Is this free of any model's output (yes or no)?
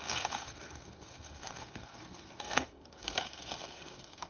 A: no